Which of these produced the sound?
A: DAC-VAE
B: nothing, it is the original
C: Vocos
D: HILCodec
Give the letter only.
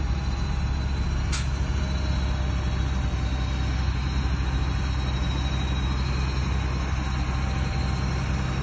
B